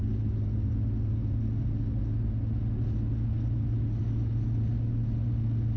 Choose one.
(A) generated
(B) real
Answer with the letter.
B